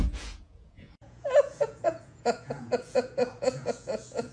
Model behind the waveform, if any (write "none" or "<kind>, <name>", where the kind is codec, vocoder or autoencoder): vocoder, Vocos